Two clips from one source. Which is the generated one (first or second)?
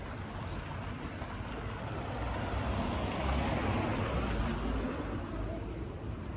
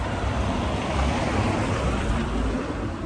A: second